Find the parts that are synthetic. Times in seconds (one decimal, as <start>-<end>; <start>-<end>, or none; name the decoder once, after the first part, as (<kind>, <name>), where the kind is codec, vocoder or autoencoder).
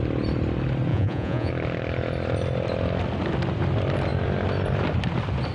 0.9-1.5 (vocoder, Vocos)